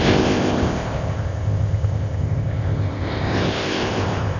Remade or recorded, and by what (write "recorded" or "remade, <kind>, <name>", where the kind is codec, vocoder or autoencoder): remade, codec, ZipCodec